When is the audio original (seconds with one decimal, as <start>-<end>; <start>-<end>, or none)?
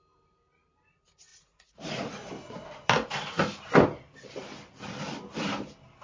0.0-1.3; 2.3-6.0